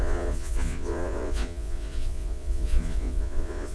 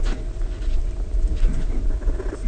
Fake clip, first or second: first